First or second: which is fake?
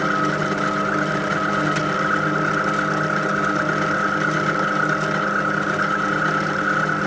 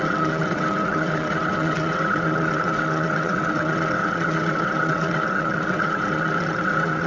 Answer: second